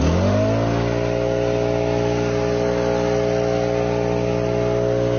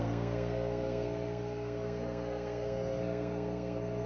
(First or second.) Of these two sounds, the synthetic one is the second